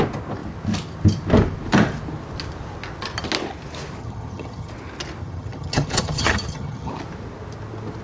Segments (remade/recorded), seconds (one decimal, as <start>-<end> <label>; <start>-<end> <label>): 0.0-4.0 recorded; 4.0-4.7 remade; 4.7-5.2 recorded; 5.2-6.9 remade; 6.9-8.0 recorded